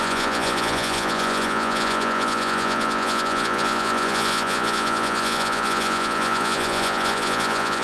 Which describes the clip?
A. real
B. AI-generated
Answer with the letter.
B